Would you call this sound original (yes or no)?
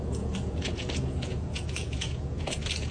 no